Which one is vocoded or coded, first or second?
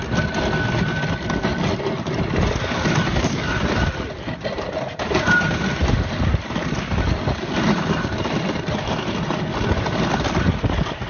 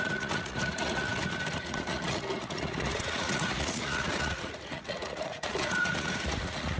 second